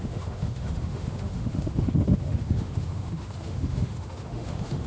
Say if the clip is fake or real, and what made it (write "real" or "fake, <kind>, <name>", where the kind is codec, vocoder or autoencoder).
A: fake, autoencoder, DAC-VAE